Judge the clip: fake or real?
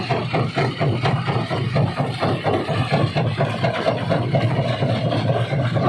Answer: real